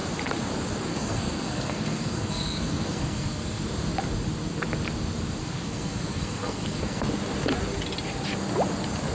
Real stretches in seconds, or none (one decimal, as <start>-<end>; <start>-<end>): 0.0-0.9; 3.6-5.4; 7.0-9.1